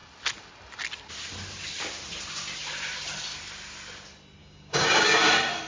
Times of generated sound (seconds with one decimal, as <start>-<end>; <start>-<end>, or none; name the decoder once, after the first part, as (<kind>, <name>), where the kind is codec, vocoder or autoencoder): 4.4-5.3 (codec, DAC)